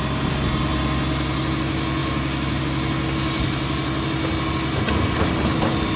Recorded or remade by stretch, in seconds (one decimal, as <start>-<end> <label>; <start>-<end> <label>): 0.0-6.0 recorded